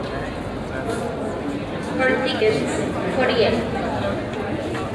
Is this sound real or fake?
real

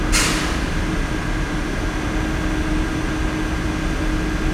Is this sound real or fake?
real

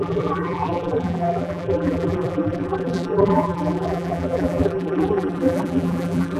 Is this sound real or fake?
fake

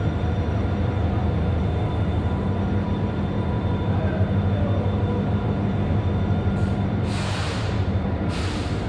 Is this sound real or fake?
fake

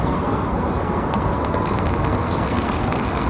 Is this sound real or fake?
fake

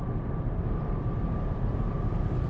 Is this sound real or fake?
real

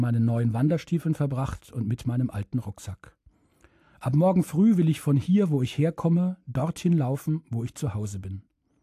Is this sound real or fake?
real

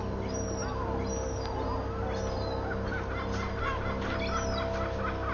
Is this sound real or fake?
real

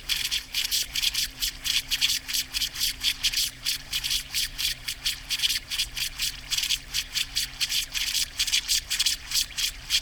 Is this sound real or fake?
fake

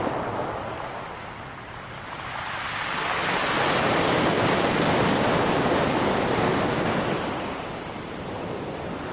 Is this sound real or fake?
real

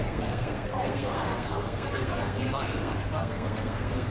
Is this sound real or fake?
fake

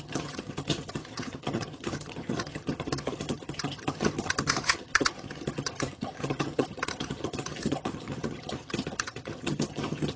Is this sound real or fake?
fake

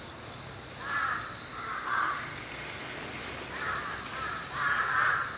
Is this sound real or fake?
real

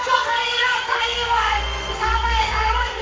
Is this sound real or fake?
fake